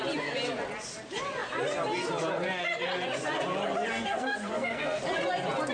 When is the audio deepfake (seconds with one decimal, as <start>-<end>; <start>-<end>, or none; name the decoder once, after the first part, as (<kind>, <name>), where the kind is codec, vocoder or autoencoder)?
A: 3.9-5.0 (codec, SNAC)